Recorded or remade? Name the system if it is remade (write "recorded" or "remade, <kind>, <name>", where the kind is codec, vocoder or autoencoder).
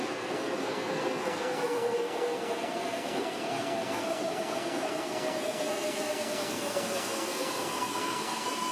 remade, codec, SNAC